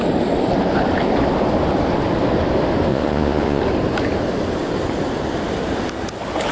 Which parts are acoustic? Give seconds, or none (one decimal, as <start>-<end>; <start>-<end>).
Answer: 0.0-2.9; 3.6-6.5